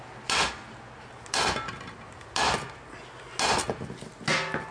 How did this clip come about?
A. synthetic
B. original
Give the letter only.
B